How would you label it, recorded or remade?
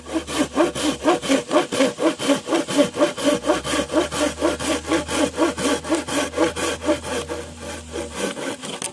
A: recorded